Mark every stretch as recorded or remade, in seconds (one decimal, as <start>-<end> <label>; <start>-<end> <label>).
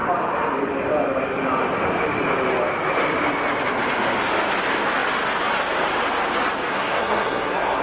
0.0-6.7 recorded; 6.7-7.8 remade